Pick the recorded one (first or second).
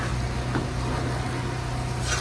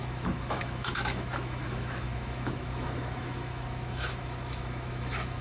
first